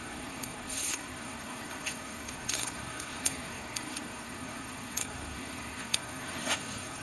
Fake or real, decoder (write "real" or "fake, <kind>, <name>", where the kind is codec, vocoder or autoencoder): fake, codec, SNAC